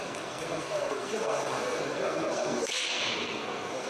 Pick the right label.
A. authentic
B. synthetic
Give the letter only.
B